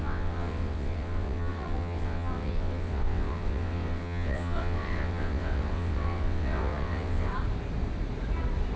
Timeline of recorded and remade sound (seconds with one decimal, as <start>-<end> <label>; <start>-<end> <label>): 0.0-7.3 remade; 7.3-8.8 recorded